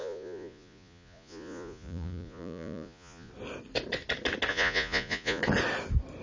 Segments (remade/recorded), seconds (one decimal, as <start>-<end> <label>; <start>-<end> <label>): 0.0-3.3 remade; 3.3-4.5 recorded; 4.5-5.4 remade; 5.4-6.2 recorded